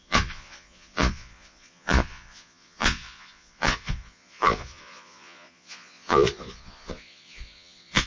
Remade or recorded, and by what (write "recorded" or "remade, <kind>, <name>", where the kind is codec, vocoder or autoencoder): remade, vocoder, Vocos